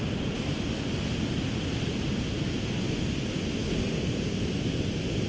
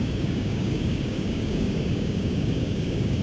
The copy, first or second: second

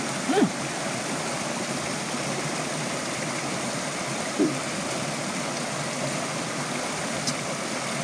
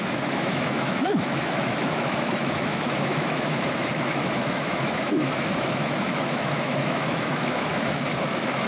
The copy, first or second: second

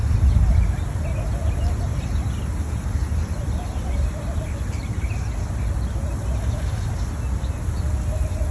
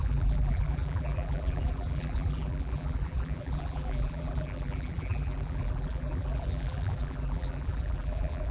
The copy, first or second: second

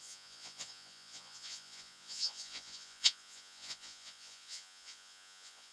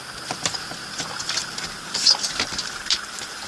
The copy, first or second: first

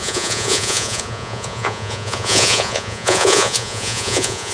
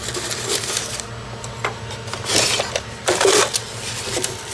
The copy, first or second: first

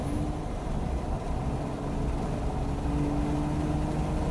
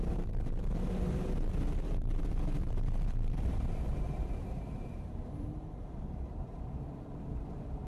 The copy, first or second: second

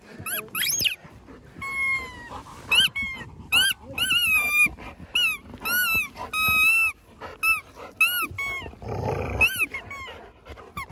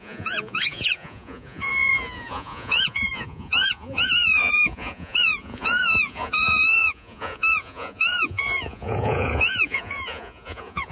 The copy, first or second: second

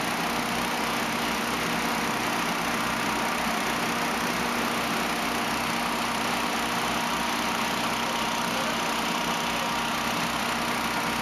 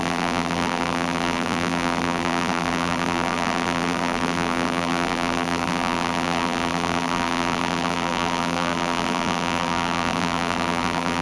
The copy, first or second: second